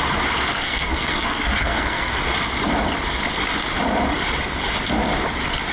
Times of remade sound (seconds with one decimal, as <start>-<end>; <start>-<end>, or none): 0.5-2.1